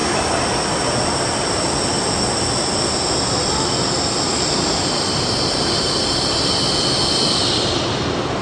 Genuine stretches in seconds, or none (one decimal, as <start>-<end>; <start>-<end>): 0.0-8.4

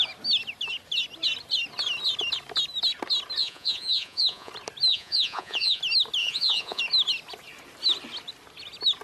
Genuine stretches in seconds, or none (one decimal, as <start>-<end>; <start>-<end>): 0.0-3.4; 4.5-4.9; 5.8-6.2; 6.8-9.0